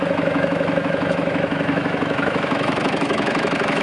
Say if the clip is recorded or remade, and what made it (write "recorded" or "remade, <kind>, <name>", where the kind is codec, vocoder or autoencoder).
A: remade, autoencoder, DAC-VAE